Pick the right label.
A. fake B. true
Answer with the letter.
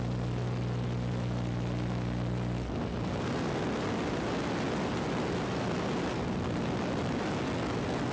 B